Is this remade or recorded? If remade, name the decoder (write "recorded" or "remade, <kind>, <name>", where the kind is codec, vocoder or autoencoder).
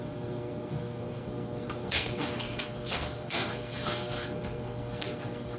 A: remade, codec, SNAC